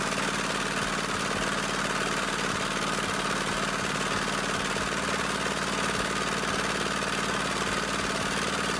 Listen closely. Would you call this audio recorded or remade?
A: recorded